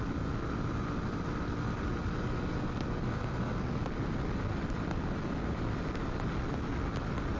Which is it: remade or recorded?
recorded